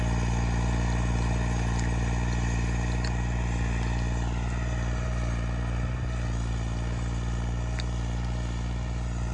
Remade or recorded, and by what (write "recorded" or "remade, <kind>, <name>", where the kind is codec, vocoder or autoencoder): recorded